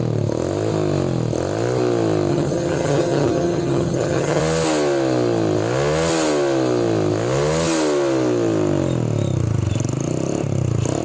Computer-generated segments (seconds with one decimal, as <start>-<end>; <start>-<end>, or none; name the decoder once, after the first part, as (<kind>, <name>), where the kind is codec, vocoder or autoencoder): 2.3-4.4 (vocoder, HiFi-GAN)